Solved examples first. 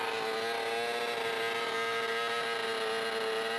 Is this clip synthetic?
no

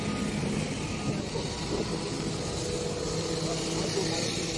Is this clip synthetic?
no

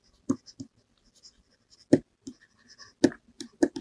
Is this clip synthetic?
no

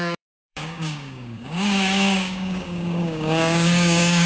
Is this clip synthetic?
yes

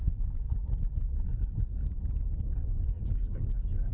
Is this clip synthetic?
yes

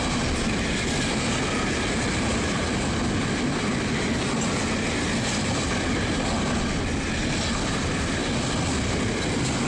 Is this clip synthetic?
no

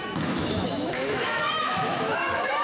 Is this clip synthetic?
yes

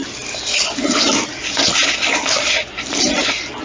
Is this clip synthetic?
yes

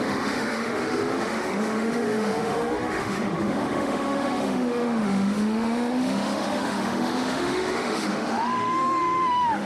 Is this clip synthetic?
yes